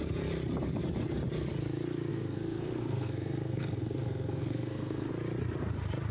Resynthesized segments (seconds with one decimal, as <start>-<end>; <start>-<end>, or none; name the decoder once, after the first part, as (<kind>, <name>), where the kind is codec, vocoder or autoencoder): 2.1-5.1 (codec, SNAC)